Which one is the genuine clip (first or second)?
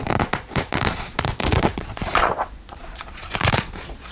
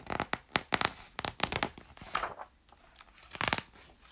second